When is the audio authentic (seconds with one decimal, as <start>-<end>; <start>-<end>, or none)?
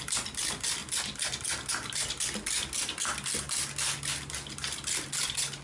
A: 0.0-5.6